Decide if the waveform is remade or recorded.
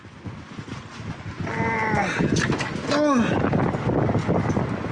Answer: recorded